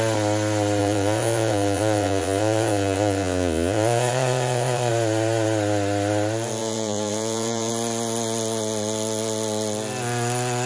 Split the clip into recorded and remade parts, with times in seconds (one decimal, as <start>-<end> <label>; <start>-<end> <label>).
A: 0.0-0.8 recorded; 0.8-4.9 remade; 4.9-6.6 recorded; 6.6-7.7 remade; 7.7-10.7 recorded